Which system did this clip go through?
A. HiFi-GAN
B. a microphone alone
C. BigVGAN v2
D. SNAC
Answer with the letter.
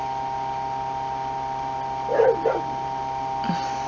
B